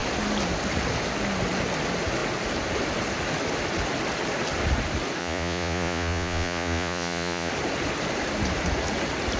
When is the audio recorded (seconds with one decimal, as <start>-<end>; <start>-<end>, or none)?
0.0-5.2; 7.5-9.4